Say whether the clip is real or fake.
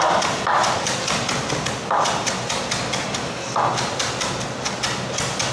real